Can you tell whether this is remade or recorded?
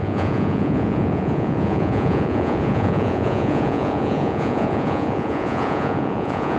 remade